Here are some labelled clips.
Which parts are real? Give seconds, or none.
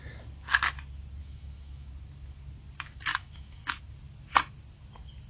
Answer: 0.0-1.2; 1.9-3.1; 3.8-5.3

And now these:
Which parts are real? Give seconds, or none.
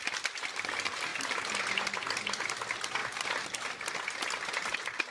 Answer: 0.0-5.1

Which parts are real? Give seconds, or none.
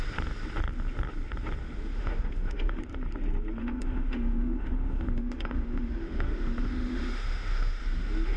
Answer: 0.0-1.6; 2.8-3.6; 7.8-8.4